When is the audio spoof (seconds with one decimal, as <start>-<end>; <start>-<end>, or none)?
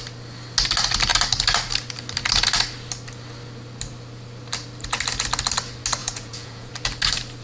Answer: 6.0-6.7